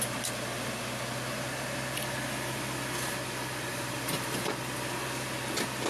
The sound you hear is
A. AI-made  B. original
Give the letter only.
B